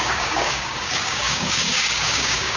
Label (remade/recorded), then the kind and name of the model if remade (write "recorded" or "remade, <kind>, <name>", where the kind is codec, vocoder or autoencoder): remade, codec, DAC